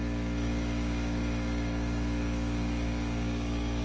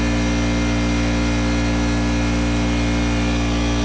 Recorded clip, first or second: second